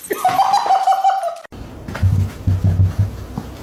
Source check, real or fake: real